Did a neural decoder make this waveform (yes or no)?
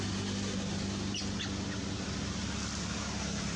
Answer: no